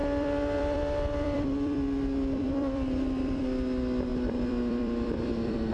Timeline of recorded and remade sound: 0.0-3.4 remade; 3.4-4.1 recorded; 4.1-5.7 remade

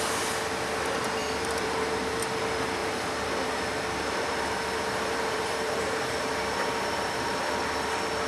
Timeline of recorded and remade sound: 0.0-1.2 recorded; 1.2-2.2 remade; 2.2-2.8 recorded; 2.8-7.4 remade; 7.4-8.3 recorded

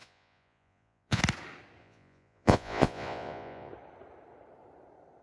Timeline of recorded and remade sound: 0.0-1.2 remade; 1.2-1.8 recorded; 1.8-3.7 remade; 3.7-5.2 recorded

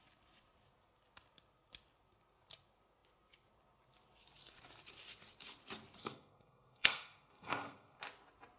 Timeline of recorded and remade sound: 0.0-6.0 recorded; 6.0-8.0 remade; 8.0-8.6 recorded

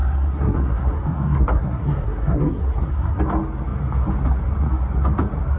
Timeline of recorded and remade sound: 0.0-3.2 remade; 3.2-5.6 recorded

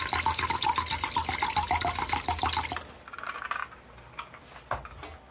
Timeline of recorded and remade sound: 0.0-5.3 recorded

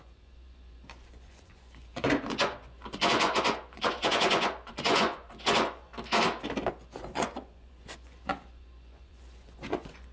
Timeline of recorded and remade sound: 0.0-5.9 remade; 5.9-6.7 recorded; 6.7-10.1 remade